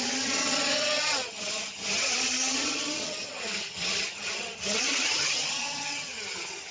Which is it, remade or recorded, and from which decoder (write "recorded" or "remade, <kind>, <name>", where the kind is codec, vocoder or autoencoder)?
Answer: remade, vocoder, HiFi-GAN